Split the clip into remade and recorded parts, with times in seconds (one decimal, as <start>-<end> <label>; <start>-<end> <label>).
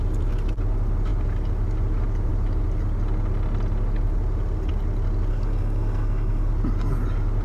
0.0-5.3 recorded; 5.3-6.5 remade; 6.5-7.4 recorded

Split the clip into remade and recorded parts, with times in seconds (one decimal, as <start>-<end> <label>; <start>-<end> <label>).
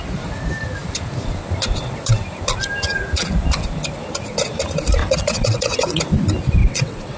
0.0-5.0 recorded; 5.0-6.0 remade; 6.0-6.6 recorded; 6.6-7.2 remade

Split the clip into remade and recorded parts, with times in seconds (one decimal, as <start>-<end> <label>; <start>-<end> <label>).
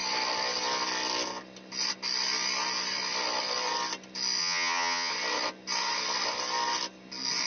0.0-4.4 recorded; 4.4-5.1 remade; 5.1-7.5 recorded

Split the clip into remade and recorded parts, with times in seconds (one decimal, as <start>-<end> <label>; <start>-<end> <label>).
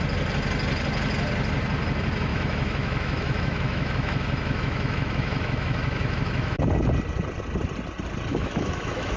0.0-2.3 recorded; 2.3-6.6 remade; 6.6-8.3 recorded; 8.3-9.2 remade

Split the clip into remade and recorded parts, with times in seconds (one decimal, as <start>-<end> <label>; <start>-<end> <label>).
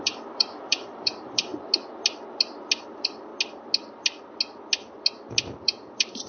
0.0-1.5 remade; 1.5-2.8 recorded; 2.8-3.3 remade; 3.3-5.6 recorded; 5.6-6.3 remade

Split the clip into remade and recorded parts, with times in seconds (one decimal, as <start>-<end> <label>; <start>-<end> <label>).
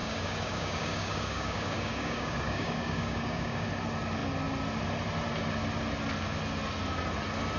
0.0-3.7 remade; 3.7-7.6 recorded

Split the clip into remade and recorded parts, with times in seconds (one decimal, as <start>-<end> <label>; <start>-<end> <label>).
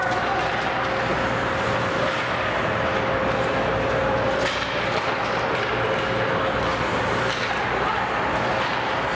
0.0-9.1 recorded